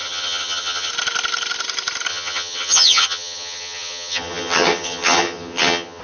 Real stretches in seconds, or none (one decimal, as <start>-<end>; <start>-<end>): 0.9-2.1